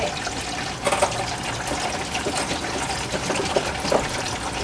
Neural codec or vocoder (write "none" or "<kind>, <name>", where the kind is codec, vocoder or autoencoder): none